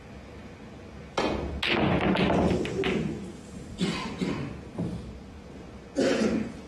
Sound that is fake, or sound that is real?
real